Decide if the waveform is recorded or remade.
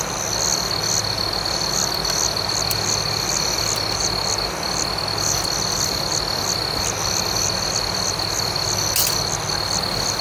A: recorded